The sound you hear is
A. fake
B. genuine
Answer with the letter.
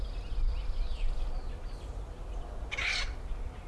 B